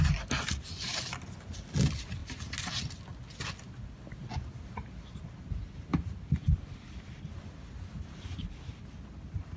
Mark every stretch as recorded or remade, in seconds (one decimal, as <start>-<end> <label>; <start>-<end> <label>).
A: 0.0-9.6 recorded